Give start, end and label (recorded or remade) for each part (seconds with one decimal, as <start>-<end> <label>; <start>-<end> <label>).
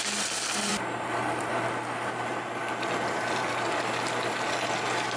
0.0-5.2 recorded